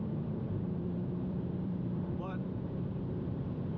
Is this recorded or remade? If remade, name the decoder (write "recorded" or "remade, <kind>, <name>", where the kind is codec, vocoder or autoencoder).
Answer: remade, vocoder, BigVGAN v2